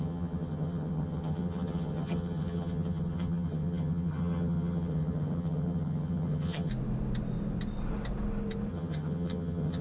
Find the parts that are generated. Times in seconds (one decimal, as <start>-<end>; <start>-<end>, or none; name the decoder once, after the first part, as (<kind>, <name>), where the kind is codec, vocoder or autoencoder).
0.0-6.7 (vocoder, HiFi-GAN); 8.7-9.8